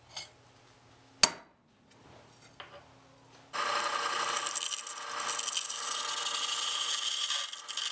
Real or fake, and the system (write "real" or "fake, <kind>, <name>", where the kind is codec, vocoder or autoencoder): real